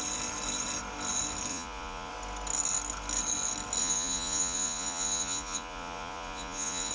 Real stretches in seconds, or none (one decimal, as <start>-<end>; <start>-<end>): 0.0-1.5; 2.1-3.8